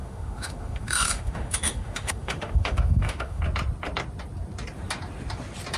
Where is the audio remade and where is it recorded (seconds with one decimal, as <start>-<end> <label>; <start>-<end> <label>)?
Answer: 0.0-3.4 remade; 3.4-5.8 recorded